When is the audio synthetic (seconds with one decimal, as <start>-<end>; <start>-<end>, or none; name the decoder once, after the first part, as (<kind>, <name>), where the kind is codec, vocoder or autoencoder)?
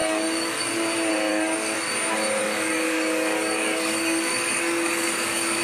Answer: 0.0-0.7 (codec, DAC); 1.3-1.9; 2.4-5.6